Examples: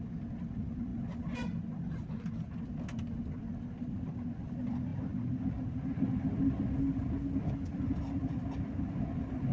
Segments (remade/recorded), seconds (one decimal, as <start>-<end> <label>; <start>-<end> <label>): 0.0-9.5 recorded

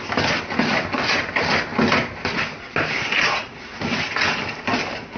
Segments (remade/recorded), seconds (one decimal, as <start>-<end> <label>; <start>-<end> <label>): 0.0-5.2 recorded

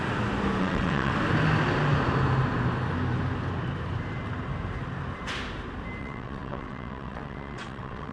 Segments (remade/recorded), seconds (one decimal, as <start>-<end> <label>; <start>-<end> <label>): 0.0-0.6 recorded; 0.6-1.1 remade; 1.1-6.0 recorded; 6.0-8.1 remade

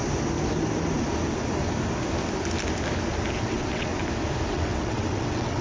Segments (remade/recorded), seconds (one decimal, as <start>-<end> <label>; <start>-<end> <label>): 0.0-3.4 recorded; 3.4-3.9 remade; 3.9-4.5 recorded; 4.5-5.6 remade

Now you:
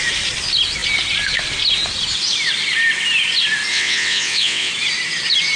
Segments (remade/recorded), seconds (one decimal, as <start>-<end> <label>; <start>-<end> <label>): 0.0-3.7 recorded; 3.7-4.7 remade; 4.7-5.6 recorded

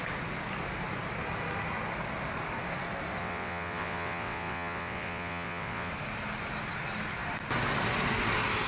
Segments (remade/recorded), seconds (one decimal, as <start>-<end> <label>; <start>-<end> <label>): 0.0-3.2 recorded; 3.2-5.9 remade; 5.9-8.7 recorded

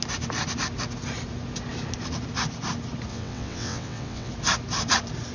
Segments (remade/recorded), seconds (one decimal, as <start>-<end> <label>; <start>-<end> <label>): 0.0-3.1 recorded; 3.1-4.3 remade; 4.3-5.3 recorded

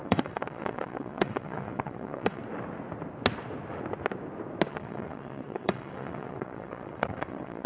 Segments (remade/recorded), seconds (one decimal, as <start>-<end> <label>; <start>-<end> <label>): 0.0-2.4 remade; 2.4-4.7 recorded; 4.7-7.7 remade